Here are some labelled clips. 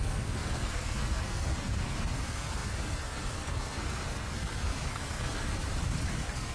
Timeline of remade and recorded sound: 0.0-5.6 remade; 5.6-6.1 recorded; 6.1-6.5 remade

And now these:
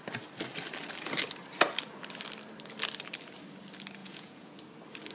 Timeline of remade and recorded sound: 0.0-4.0 recorded; 4.0-4.6 remade; 4.6-5.1 recorded

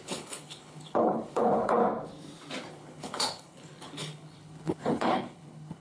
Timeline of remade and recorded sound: 0.0-1.8 remade; 1.8-2.7 recorded; 2.7-5.8 remade

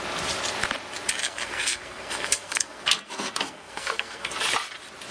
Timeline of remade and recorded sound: 0.0-1.2 recorded; 1.2-4.3 remade; 4.3-5.1 recorded